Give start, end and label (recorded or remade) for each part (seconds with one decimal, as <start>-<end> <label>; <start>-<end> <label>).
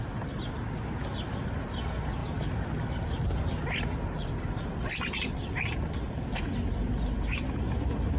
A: 0.0-8.2 recorded